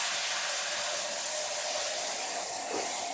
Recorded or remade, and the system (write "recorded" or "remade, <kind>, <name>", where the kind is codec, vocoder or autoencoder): recorded